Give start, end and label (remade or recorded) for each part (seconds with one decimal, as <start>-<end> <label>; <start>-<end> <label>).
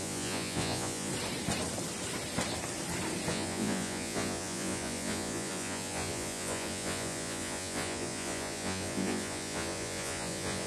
0.0-1.1 remade; 1.1-3.3 recorded; 3.3-10.7 remade